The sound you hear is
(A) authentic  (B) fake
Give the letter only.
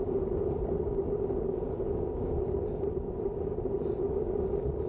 A